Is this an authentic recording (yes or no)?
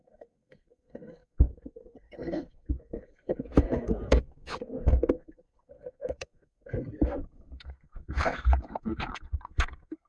no